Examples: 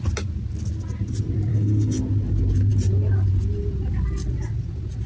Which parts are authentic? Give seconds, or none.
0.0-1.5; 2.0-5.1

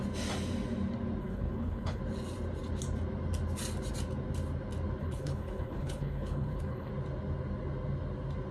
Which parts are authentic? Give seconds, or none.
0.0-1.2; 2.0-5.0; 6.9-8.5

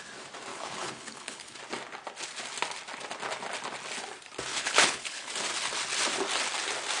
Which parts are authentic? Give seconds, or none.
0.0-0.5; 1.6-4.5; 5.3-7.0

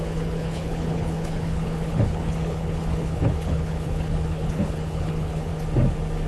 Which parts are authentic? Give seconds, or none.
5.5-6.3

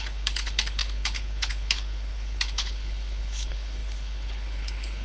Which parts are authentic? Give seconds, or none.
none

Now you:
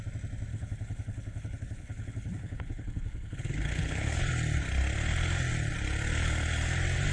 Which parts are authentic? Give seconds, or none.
0.0-0.5; 4.2-7.1